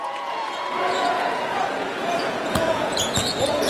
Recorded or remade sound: remade